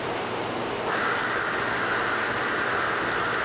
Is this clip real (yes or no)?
yes